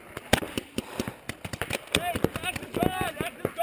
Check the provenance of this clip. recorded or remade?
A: remade